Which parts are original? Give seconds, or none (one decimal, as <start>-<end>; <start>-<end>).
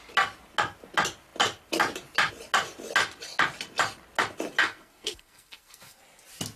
0.0-4.6; 6.0-6.6